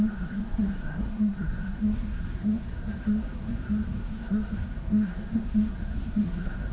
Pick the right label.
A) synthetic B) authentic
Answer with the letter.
A